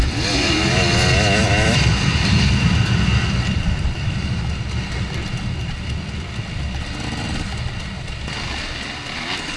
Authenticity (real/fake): real